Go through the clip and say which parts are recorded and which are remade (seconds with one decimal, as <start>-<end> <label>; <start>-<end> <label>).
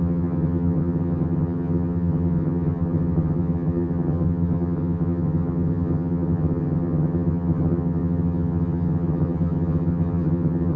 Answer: 0.0-10.8 remade